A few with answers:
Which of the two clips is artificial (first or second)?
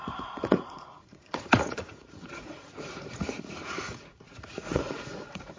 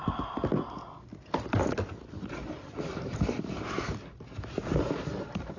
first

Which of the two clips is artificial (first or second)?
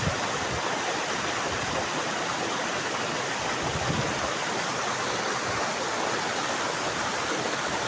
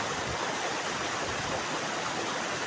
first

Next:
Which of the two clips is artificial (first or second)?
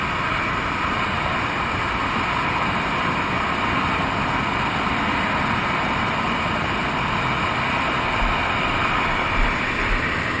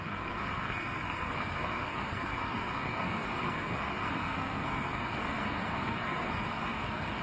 second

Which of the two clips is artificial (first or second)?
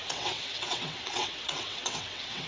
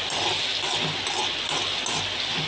first